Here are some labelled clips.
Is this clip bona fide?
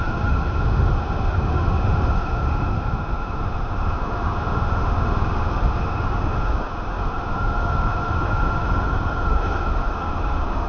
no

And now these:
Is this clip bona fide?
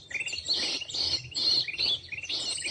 yes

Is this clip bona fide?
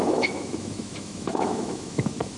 no